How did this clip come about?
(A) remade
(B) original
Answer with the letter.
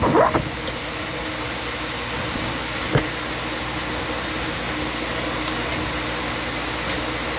B